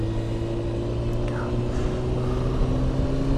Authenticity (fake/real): real